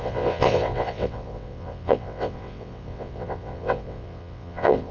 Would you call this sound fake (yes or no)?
yes